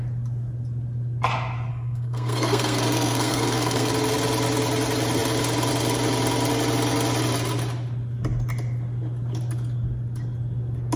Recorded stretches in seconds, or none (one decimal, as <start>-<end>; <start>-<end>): 0.0-1.7; 3.9-11.0